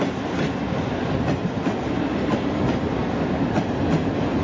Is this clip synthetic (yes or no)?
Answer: no